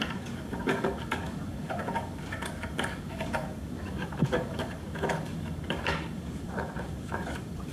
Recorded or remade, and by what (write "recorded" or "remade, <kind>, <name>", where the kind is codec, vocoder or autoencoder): remade, codec, DAC